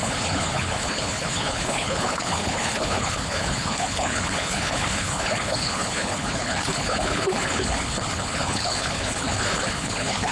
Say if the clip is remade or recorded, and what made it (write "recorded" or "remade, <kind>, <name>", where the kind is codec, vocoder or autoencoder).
remade, codec, HILCodec